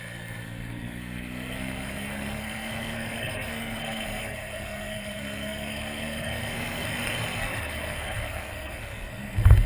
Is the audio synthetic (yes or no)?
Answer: yes